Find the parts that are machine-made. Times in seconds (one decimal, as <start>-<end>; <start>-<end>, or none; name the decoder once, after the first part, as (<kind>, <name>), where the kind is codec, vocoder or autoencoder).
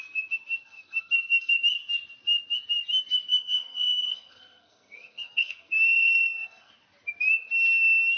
0.6-1.5 (codec, SNAC); 3.3-6.7